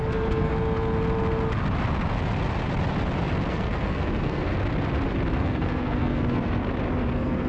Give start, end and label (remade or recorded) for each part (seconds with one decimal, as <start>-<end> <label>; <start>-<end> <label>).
0.0-0.5 remade; 0.5-3.5 recorded; 3.5-4.5 remade; 4.5-5.4 recorded; 5.4-6.6 remade; 6.6-7.1 recorded; 7.1-7.5 remade